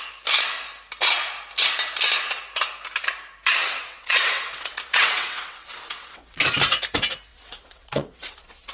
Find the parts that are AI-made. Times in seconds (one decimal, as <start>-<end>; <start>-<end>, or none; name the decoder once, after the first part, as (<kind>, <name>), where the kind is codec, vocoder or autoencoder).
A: 3.6-6.4 (vocoder, WaveNeXt); 7.3-8.7